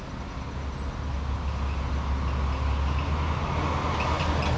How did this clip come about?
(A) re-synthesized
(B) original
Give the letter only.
B